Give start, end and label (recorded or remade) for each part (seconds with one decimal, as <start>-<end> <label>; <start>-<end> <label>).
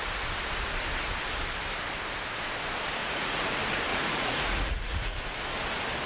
0.0-3.0 recorded; 3.0-3.5 remade; 3.5-3.9 recorded; 3.9-5.2 remade; 5.2-6.1 recorded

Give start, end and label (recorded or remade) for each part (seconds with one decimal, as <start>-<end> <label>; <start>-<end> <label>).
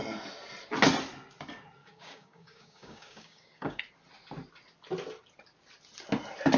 0.0-1.8 recorded; 1.8-3.8 remade; 3.8-6.6 recorded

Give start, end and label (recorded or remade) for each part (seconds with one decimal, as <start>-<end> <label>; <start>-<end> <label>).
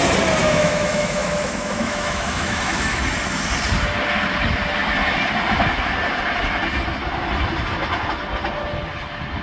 0.0-0.4 recorded; 0.4-3.0 remade; 3.0-9.4 recorded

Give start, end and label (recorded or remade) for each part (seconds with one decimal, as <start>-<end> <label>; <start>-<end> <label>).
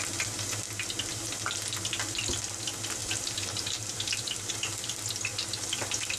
0.0-3.0 recorded; 3.0-4.5 remade; 4.5-6.2 recorded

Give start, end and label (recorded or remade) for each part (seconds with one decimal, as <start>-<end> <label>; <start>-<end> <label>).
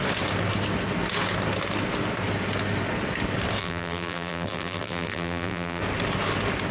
0.0-3.6 recorded; 3.6-5.8 remade; 5.8-6.7 recorded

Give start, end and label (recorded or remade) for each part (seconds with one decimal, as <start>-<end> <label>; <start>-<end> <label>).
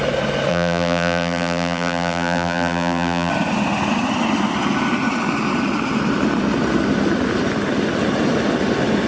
0.0-0.5 recorded; 0.5-3.3 remade; 3.3-9.1 recorded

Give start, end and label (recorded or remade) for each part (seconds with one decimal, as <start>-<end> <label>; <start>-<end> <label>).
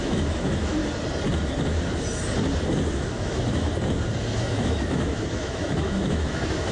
0.0-0.8 remade; 0.8-2.9 recorded; 2.9-3.7 remade; 3.7-4.4 recorded; 4.4-6.7 remade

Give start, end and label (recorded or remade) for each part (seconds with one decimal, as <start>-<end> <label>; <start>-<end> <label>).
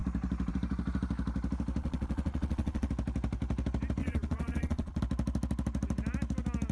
0.0-1.8 recorded; 1.8-2.9 remade; 2.9-4.0 recorded; 4.0-5.0 remade; 5.0-6.7 recorded